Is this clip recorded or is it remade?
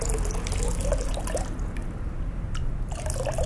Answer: recorded